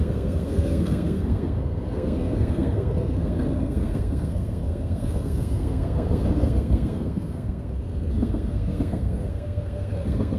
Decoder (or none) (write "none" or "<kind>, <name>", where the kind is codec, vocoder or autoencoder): codec, SNAC